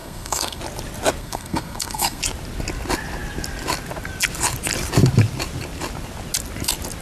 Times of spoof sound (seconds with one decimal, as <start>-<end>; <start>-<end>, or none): 0.0-0.6; 1.2-2.2

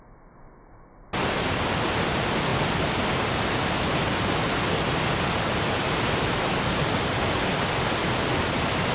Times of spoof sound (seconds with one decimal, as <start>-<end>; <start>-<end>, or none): none

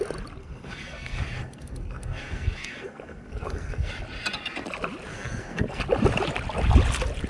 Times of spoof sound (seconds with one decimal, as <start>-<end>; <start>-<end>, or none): 0.4-3.9; 5.1-5.8

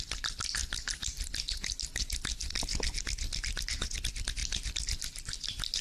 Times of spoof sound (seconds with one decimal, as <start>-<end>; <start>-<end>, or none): none

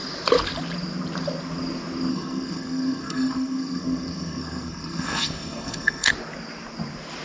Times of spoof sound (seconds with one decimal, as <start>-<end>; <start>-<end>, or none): 2.1-6.1

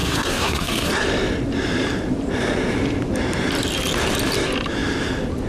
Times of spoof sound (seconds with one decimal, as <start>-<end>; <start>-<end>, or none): 0.0-0.9